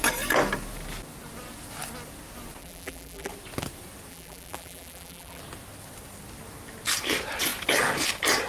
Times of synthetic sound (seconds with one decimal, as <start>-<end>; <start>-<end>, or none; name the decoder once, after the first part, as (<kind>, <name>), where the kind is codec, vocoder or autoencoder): 2.6-3.3 (vocoder, BigVGAN v2); 4.1-5.4